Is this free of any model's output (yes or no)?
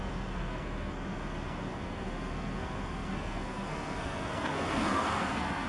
no